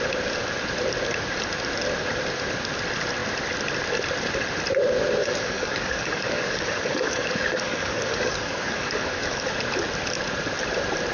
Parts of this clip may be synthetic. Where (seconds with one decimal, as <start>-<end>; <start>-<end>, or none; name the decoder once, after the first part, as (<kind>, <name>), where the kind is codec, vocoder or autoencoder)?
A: 5.2-9.4 (codec, DAC)